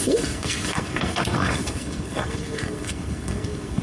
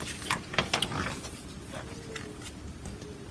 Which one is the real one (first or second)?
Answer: second